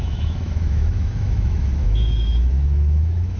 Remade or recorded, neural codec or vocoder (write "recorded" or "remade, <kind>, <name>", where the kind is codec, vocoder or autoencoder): remade, autoencoder, DAC-VAE